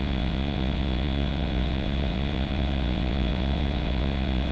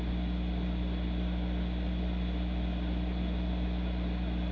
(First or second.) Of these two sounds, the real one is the second